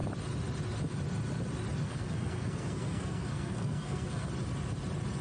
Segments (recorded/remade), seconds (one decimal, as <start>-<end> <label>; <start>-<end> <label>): 0.0-1.8 recorded; 1.8-4.3 remade; 4.3-5.2 recorded